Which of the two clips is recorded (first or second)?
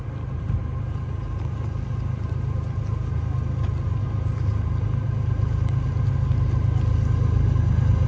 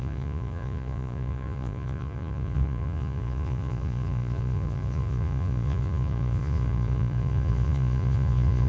first